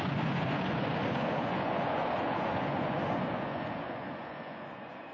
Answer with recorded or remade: remade